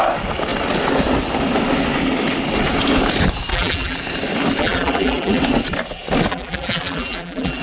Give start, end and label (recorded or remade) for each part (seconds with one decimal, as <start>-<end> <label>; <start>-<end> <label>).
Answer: 0.0-3.5 recorded; 3.5-4.0 remade; 4.0-4.6 recorded; 4.6-5.4 remade; 5.4-6.3 recorded; 6.3-7.6 remade